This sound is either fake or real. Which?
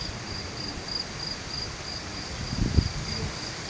real